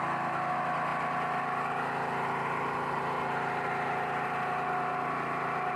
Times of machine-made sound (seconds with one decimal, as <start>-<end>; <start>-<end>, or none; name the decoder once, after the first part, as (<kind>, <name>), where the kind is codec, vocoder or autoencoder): none